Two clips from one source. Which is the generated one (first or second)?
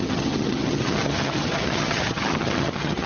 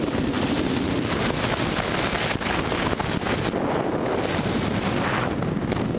first